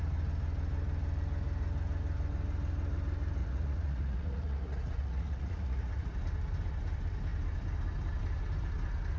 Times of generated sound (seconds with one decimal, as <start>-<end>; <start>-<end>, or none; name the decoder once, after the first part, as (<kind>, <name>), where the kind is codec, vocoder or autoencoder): 3.4-6.1 (vocoder, Vocos)